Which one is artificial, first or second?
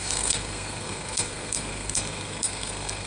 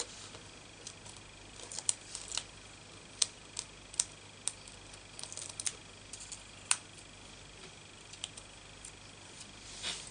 first